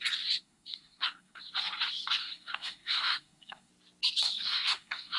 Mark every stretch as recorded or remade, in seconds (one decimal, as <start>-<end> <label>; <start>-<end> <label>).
0.0-0.4 recorded; 0.4-1.5 remade; 1.5-2.2 recorded; 2.2-3.7 remade; 3.7-4.2 recorded; 4.2-5.2 remade